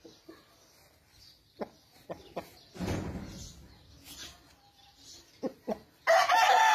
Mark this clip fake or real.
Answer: real